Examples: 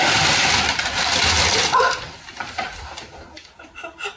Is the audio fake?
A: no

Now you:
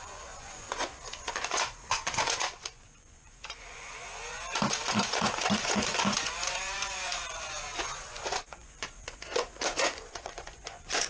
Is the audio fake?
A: yes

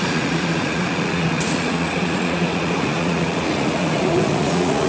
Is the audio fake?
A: yes